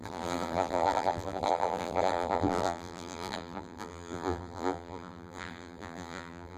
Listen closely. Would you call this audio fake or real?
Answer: fake